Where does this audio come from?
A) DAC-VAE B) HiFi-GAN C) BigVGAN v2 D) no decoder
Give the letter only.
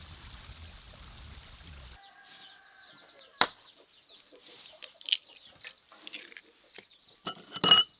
D